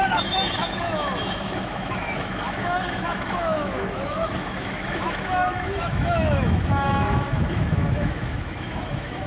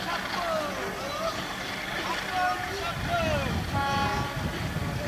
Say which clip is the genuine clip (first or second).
second